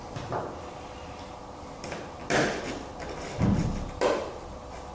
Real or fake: real